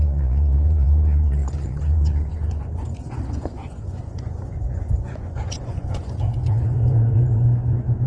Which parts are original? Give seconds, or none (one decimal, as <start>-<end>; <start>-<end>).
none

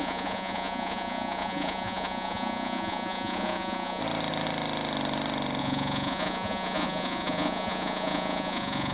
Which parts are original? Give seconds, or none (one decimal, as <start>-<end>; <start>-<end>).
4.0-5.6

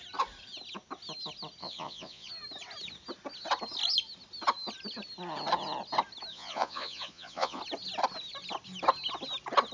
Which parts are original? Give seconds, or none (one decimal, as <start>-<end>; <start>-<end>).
0.0-1.6; 2.3-6.3; 7.6-9.7